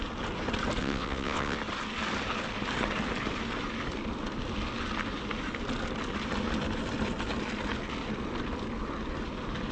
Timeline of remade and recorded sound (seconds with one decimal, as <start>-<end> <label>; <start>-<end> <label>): 0.0-0.8 recorded; 0.8-1.6 remade; 1.6-9.7 recorded